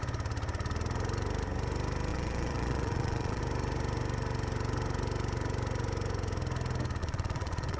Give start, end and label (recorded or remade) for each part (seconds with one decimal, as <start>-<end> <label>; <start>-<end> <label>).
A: 0.0-2.1 recorded; 2.1-3.4 remade; 3.4-7.0 recorded; 7.0-7.8 remade